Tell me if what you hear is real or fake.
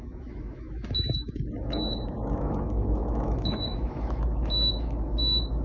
fake